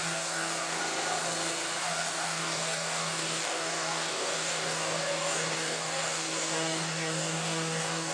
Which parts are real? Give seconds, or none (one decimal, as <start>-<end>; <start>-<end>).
0.8-1.8